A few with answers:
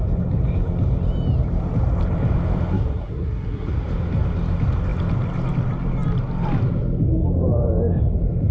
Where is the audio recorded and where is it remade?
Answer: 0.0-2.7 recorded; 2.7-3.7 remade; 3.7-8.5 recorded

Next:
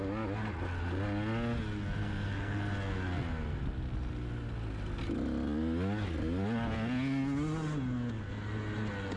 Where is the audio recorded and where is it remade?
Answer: 0.0-2.0 recorded; 2.0-2.7 remade; 2.7-9.2 recorded

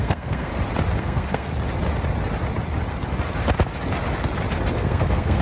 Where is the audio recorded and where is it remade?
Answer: 0.0-0.5 remade; 0.5-1.0 recorded; 1.0-1.5 remade; 1.5-4.7 recorded; 4.7-5.4 remade

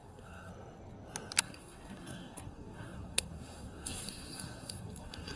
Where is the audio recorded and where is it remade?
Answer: 0.0-0.5 remade; 0.5-1.4 recorded; 1.4-5.4 remade

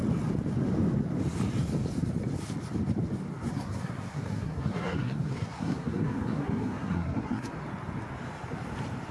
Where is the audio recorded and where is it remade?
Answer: 0.0-3.5 recorded; 3.5-7.5 remade; 7.5-9.1 recorded

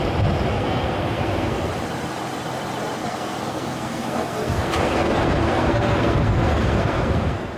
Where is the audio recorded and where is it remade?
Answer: 0.0-0.5 recorded; 0.5-1.7 remade; 1.7-3.0 recorded; 3.0-7.6 remade